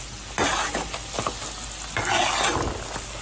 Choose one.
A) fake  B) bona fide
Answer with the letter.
B